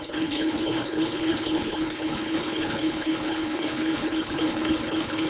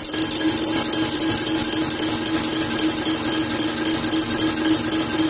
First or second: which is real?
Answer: second